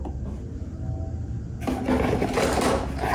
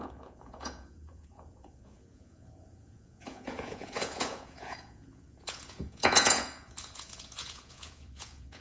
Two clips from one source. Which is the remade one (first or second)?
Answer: second